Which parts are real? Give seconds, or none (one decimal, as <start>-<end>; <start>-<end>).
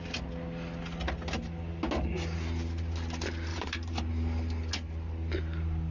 0.0-3.5; 4.1-5.9